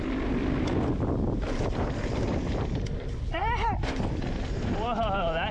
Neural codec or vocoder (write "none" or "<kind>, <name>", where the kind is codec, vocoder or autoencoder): none